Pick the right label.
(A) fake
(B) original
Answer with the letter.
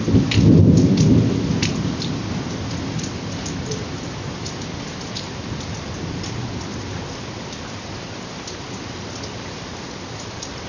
A